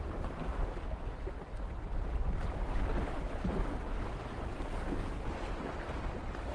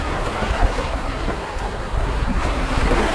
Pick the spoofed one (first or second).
second